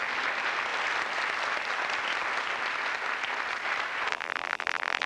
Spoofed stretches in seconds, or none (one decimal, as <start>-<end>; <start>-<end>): 4.1-5.1